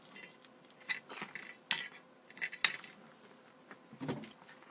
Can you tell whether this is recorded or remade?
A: recorded